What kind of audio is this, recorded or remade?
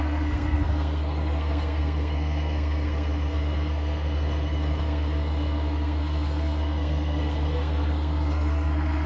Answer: remade